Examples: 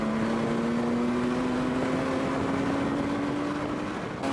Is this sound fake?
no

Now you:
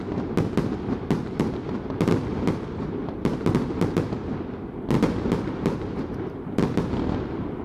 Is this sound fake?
no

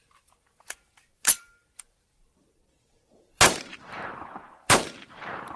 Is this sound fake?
yes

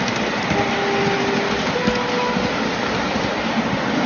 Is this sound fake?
no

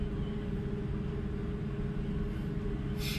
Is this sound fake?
no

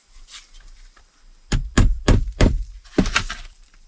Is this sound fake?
yes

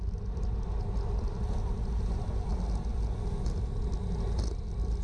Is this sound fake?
no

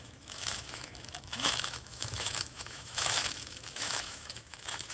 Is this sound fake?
yes